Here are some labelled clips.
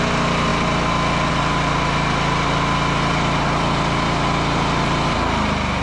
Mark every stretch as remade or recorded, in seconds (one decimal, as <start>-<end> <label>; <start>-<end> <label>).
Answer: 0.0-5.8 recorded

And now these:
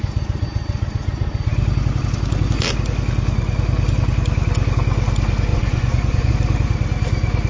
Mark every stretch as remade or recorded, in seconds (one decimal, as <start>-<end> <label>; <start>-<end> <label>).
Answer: 0.0-5.5 recorded; 5.5-6.3 remade; 6.3-7.5 recorded

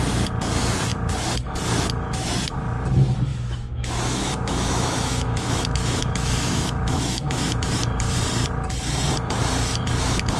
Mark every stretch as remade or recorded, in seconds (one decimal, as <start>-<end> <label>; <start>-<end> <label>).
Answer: 0.0-3.3 recorded; 3.3-7.8 remade; 7.8-10.4 recorded

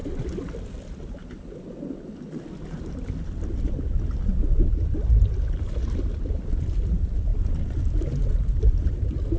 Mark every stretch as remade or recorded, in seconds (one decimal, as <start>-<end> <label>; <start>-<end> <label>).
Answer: 0.0-0.6 recorded; 0.6-1.2 remade; 1.2-6.2 recorded; 6.2-9.4 remade